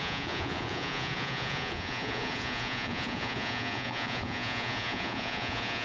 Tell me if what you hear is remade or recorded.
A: remade